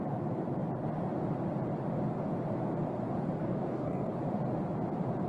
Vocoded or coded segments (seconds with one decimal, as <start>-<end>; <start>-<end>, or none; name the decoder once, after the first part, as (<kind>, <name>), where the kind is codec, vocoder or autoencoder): 3.4-4.1 (codec, DAC)